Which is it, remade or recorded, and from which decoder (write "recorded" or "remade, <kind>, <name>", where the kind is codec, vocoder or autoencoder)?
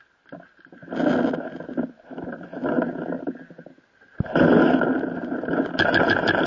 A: recorded